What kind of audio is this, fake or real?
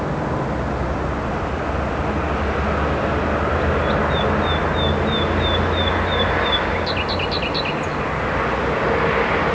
real